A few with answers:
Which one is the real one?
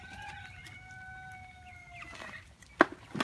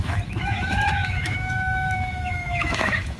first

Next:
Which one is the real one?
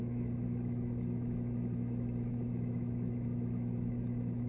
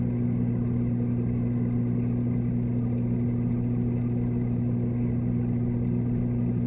second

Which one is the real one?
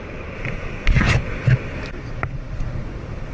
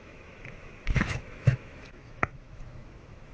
first